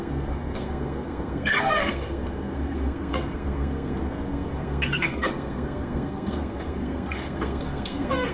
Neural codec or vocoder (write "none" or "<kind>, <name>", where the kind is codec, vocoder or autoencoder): codec, SNAC